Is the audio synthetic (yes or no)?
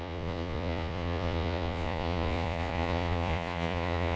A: yes